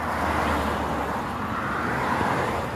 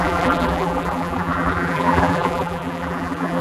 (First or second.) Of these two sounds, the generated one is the second